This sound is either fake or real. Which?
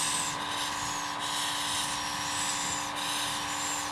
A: real